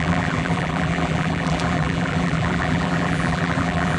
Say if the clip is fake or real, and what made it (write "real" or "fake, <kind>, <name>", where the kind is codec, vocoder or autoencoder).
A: fake, vocoder, BigVGAN v2